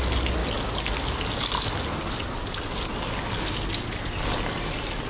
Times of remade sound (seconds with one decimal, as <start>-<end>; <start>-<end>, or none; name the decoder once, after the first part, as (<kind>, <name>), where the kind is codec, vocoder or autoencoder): none